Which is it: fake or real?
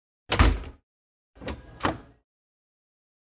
real